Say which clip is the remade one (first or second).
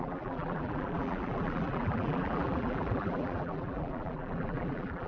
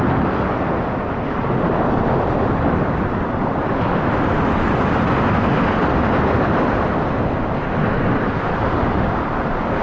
first